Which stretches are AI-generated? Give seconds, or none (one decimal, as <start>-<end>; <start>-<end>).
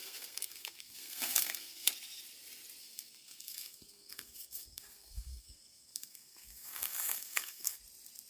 0.0-1.9; 2.8-7.8